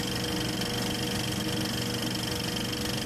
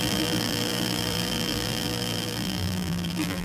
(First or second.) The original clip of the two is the first